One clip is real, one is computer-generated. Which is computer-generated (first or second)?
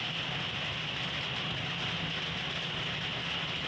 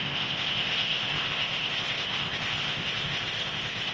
second